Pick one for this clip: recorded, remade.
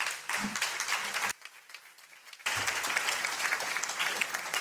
remade